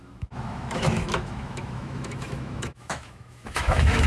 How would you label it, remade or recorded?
remade